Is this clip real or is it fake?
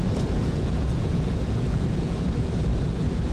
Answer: fake